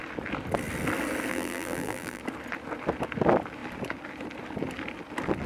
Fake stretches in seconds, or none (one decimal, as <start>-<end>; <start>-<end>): 1.3-2.2